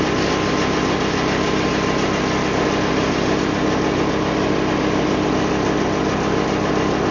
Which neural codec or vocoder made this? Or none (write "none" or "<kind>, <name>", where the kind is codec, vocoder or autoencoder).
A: none